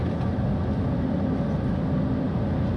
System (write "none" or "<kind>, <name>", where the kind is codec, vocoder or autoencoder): none